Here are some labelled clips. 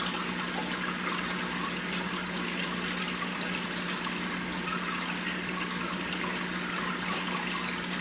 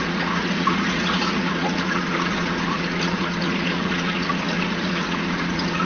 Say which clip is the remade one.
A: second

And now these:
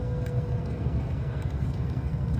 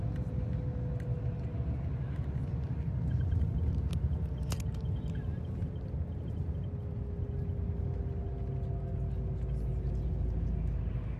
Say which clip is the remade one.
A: first